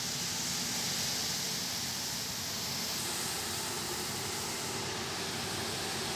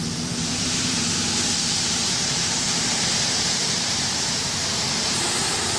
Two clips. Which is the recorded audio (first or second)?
first